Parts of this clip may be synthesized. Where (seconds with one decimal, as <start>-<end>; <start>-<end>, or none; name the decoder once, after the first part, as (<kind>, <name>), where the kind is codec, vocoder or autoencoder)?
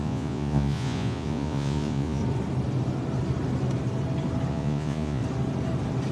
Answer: 0.0-2.2 (vocoder, Vocos); 4.5-5.2